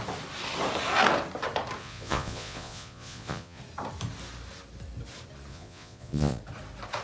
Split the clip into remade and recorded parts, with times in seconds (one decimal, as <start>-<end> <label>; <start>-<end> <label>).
0.0-1.8 recorded; 1.8-3.6 remade; 3.6-5.5 recorded; 5.5-6.4 remade; 6.4-7.0 recorded